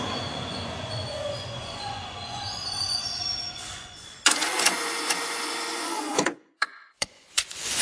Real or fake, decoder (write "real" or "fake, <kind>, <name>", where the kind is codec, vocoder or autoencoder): fake, vocoder, Vocos